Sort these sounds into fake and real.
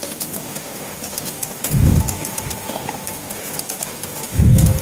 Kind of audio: fake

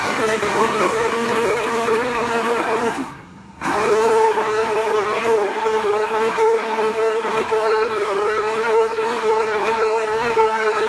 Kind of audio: fake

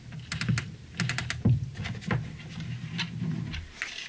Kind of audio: real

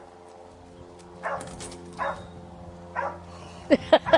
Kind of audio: real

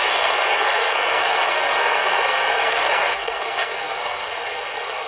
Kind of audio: fake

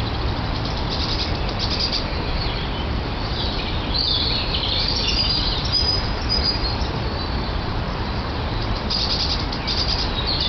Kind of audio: fake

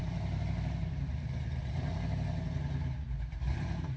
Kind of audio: fake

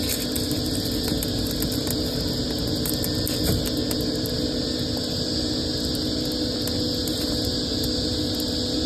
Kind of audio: real